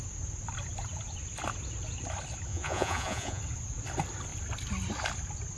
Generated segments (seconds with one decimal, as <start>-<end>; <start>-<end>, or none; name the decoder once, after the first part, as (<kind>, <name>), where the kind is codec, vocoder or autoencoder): 2.5-3.4 (vocoder, Vocos)